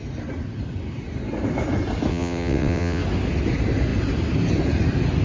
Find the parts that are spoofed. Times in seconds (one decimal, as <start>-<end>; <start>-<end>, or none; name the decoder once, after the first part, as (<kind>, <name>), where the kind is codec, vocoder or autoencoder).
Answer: 2.1-3.0 (vocoder, WaveNeXt)

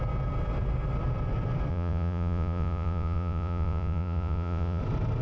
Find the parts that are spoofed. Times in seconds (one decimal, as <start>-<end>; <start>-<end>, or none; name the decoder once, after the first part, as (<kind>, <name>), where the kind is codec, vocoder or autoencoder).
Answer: 1.7-4.8 (vocoder, Vocos)

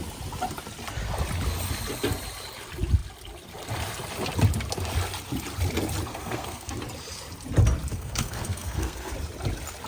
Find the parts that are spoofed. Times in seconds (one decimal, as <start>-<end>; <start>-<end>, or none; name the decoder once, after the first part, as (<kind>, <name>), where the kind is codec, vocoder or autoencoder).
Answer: 6.1-6.7 (codec, SNAC); 7.9-9.1

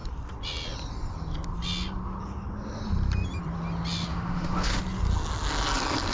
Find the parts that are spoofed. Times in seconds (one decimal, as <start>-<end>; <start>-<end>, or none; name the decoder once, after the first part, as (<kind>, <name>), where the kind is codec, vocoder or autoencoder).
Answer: 4.1-4.8 (autoencoder, DAC-VAE)

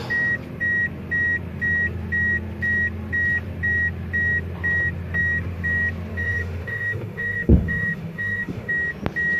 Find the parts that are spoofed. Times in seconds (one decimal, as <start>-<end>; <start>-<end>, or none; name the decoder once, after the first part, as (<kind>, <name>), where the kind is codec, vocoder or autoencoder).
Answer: 6.1-8.7 (autoencoder, DAC-VAE)

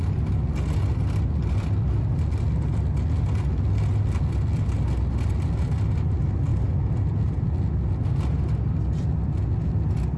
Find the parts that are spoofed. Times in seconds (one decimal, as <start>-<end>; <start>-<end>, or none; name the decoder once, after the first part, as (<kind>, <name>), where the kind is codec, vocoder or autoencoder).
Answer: none

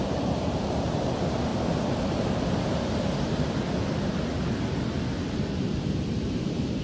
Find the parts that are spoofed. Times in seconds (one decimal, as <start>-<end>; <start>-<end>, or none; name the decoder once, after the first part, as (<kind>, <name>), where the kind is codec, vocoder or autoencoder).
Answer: 0.0-1.5 (vocoder, BigVGAN v2); 5.2-6.8

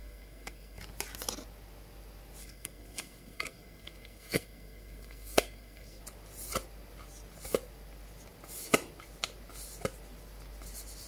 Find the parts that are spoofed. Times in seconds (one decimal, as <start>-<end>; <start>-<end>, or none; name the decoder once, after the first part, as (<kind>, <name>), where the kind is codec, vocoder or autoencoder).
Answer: 0.0-0.8 (codec, SNAC); 2.4-6.0